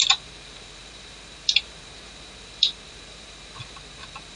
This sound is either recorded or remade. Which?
remade